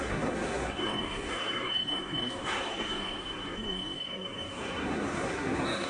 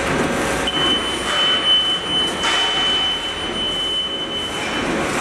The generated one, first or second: first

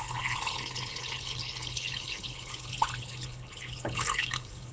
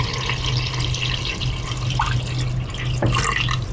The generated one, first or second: first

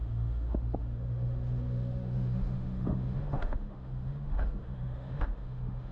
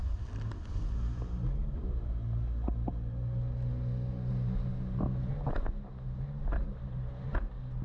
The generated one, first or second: first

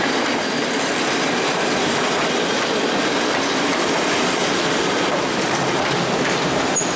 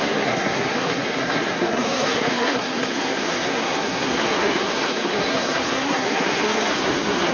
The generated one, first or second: second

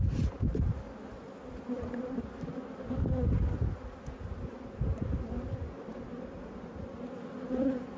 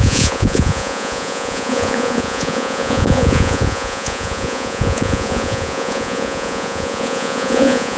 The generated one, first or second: second